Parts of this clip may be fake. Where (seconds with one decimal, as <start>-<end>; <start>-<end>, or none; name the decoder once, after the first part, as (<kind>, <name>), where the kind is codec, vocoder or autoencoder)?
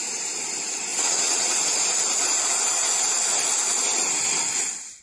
0.9-1.6 (vocoder, WaveNeXt)